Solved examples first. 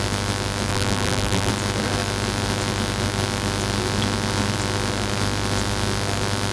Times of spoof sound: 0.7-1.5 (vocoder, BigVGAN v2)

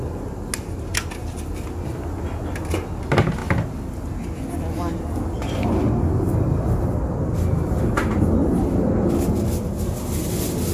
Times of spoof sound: none

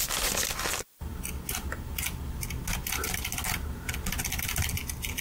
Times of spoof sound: none

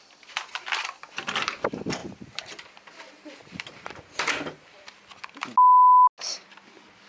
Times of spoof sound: 2.0-2.5 (vocoder, BigVGAN v2); 3.4-5.0

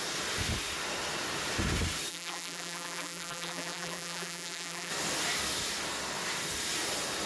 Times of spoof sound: 2.1-4.9 (vocoder, BigVGAN v2)